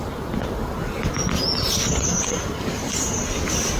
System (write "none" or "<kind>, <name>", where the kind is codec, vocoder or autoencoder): none